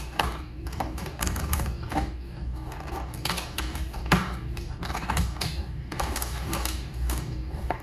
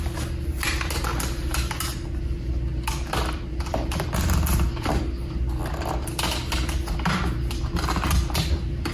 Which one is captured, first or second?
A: second